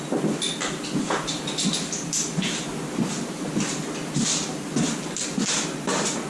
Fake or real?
real